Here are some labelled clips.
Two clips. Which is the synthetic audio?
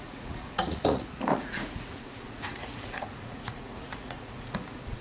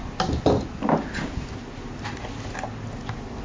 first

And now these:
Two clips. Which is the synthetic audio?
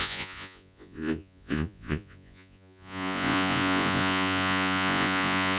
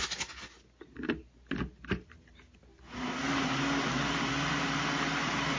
first